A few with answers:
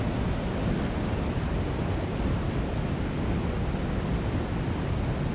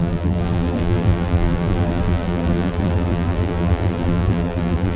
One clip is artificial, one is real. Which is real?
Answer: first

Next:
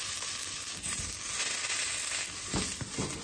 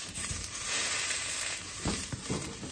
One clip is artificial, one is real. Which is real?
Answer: first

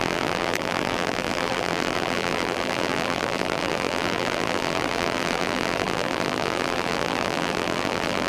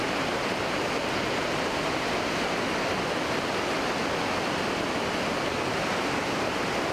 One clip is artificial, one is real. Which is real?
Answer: second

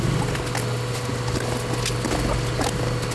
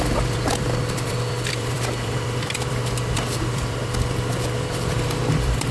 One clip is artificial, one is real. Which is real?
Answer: first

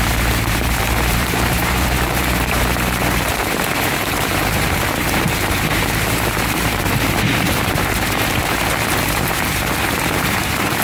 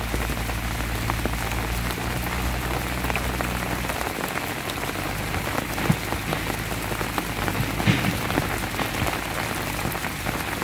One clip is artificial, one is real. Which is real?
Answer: second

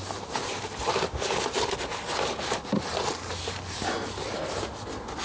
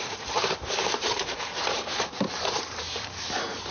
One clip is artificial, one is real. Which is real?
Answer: first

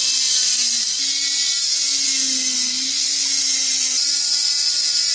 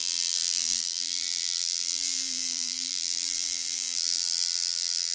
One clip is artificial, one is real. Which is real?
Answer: first